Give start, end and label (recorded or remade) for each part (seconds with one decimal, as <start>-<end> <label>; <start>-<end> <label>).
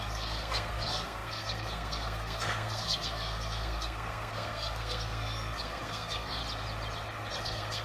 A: 0.0-6.4 remade; 6.4-7.3 recorded; 7.3-7.8 remade